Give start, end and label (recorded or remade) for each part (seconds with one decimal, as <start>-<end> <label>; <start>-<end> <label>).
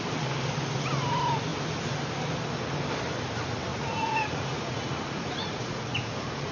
0.0-3.7 recorded; 3.7-6.5 remade